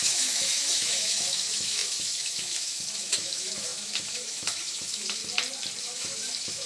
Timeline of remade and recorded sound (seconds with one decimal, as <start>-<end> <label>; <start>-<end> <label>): 0.0-5.2 remade; 5.2-5.8 recorded; 5.8-6.7 remade